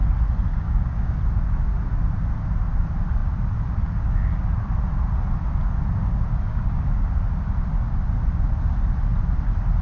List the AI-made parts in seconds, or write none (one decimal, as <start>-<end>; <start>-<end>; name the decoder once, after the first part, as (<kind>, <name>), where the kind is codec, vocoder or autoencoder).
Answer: 0.5-1.2 (codec, DAC); 6.5-7.1